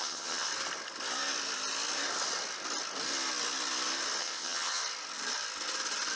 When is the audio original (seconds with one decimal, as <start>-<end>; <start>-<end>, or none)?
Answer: 0.5-4.2; 4.8-6.2